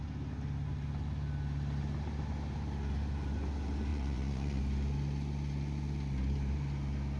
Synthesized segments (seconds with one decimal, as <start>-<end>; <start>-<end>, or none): 3.9-4.6